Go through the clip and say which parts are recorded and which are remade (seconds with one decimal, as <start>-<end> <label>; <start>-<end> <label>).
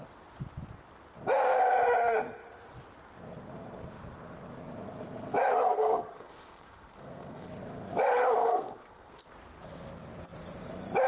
0.0-5.7 recorded; 5.7-7.5 remade; 7.5-8.4 recorded; 8.4-9.3 remade; 9.3-11.1 recorded